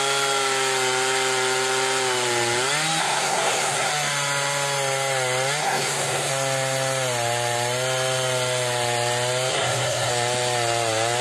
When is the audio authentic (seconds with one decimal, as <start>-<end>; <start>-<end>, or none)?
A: 0.0-3.0; 3.9-5.6; 6.3-9.5; 10.1-11.2